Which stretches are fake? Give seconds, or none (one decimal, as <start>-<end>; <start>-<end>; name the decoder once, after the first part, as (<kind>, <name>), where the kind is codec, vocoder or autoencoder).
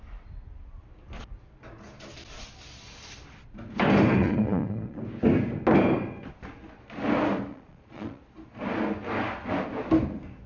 4.2-5.0 (vocoder, Vocos); 7.5-8.2